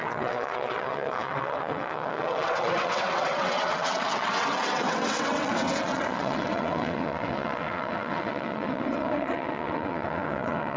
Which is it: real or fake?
fake